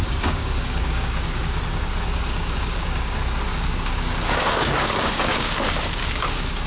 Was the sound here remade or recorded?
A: remade